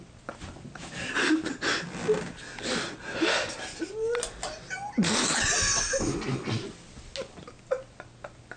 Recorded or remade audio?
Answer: recorded